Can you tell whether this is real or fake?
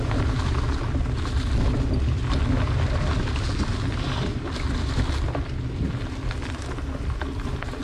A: real